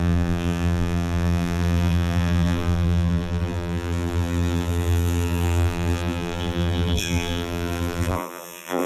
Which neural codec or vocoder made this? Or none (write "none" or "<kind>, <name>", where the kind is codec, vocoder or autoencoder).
vocoder, BigVGAN v2